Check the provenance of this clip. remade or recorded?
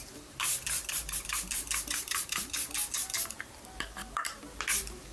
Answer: remade